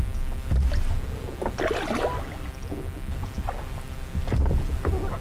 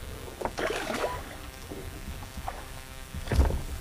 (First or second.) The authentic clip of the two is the first